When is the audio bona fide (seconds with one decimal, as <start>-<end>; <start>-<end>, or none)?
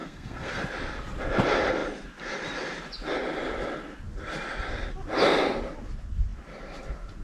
0.6-7.2